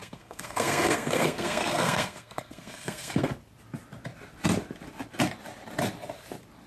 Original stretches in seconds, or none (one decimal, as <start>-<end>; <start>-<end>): 3.3-6.7